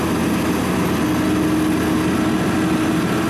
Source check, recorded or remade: recorded